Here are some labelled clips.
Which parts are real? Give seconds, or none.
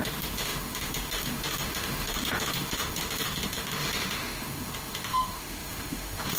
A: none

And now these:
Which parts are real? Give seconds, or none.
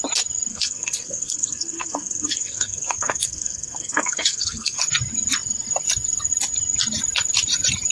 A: 0.0-0.5; 4.8-7.9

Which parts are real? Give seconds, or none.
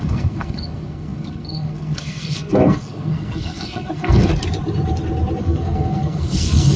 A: 4.3-5.4